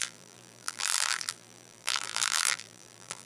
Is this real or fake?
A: fake